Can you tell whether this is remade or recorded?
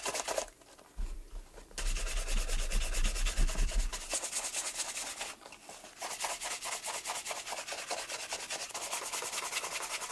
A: recorded